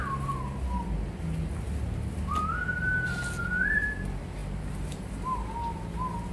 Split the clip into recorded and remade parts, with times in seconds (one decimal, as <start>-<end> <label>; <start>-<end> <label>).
0.0-6.3 recorded